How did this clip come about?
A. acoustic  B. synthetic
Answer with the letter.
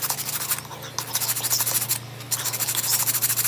A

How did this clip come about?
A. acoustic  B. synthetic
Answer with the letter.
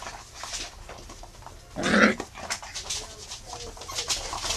A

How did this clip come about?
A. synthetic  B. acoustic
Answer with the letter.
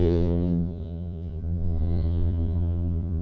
A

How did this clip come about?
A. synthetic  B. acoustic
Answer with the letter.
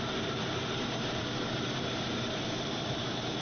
A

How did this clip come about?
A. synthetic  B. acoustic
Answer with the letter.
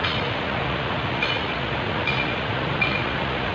A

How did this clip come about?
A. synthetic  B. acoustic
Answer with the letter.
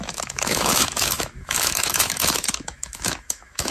A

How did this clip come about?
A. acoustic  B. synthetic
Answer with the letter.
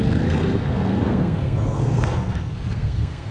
B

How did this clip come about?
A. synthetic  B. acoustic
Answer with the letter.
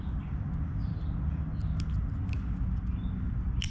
B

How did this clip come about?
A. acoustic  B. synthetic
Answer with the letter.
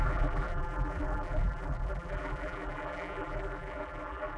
B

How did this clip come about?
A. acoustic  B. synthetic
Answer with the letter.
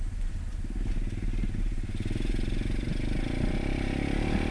A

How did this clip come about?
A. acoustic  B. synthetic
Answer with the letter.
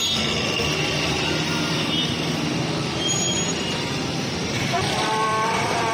B